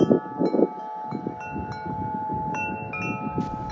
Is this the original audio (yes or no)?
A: yes